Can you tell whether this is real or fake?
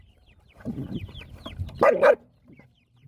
fake